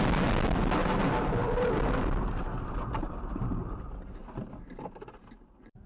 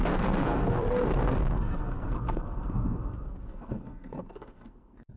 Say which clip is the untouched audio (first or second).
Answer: first